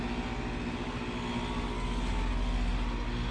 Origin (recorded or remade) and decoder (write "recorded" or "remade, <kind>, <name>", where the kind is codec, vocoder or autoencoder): recorded